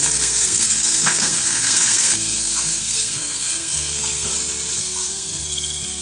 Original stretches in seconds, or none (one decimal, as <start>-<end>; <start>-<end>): 4.3-4.8